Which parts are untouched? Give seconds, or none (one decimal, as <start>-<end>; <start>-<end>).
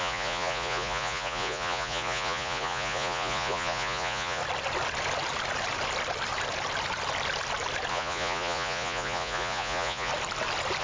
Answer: 4.4-7.9; 10.1-10.8